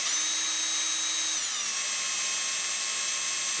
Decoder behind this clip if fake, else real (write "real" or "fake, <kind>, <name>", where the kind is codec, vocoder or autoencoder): real